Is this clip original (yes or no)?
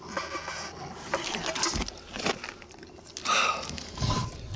yes